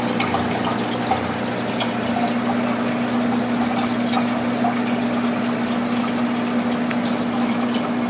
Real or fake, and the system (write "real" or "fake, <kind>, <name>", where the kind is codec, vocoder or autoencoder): real